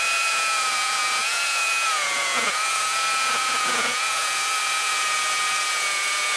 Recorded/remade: remade